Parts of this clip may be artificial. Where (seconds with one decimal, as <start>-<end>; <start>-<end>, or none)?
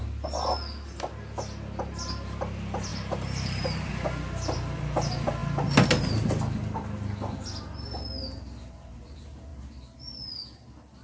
2.9-3.9